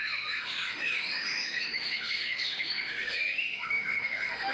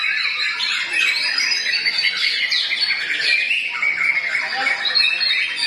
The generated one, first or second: first